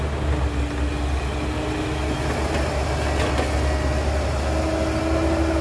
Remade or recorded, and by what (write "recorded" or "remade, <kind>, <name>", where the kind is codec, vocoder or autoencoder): recorded